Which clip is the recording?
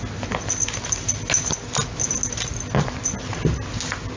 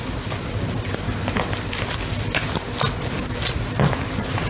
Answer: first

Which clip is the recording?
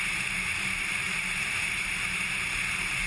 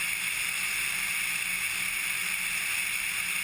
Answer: second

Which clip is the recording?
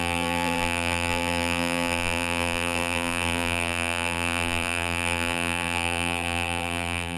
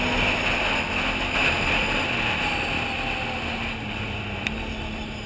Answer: second